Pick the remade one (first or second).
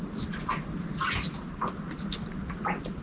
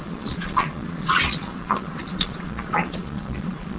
second